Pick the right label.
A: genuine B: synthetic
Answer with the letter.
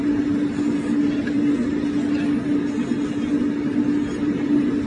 A